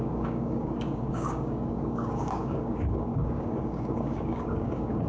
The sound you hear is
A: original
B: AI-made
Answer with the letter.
B